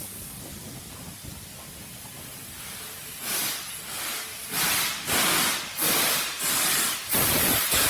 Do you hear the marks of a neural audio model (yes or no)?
no